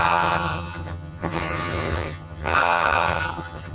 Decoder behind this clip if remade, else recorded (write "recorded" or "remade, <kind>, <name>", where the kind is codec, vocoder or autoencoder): remade, vocoder, HiFi-GAN